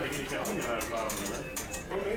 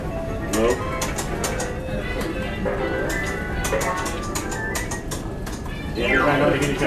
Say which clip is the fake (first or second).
first